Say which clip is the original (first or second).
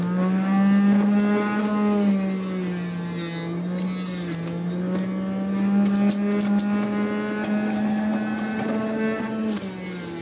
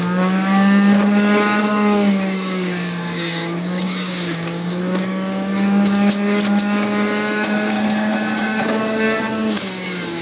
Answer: first